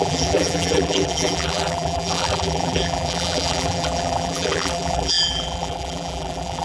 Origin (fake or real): fake